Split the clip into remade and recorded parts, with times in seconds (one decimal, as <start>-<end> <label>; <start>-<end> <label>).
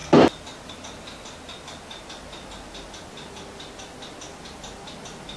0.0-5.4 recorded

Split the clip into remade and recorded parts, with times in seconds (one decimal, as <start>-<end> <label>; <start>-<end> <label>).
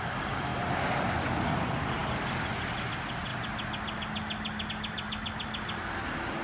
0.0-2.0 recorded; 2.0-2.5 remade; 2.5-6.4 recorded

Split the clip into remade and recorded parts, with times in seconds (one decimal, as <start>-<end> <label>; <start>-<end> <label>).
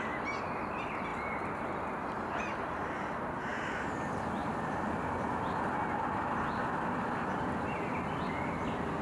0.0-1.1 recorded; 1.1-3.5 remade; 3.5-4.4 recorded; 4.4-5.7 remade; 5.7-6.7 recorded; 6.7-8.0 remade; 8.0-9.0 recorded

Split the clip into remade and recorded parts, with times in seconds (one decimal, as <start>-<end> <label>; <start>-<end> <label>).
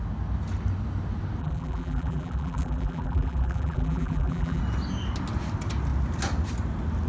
0.0-1.4 recorded; 1.4-4.6 remade; 4.6-7.1 recorded